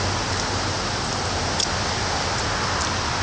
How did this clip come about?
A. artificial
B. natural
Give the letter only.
B